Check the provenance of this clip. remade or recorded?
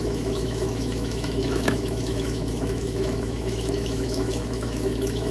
remade